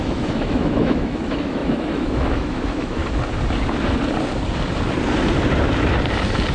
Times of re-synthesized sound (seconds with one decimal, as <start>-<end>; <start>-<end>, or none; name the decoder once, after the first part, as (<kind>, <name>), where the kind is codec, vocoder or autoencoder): 0.0-3.0 (autoencoder, DAC-VAE)